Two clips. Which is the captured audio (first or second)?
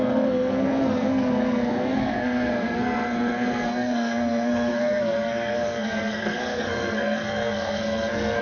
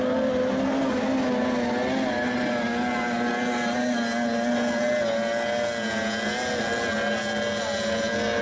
second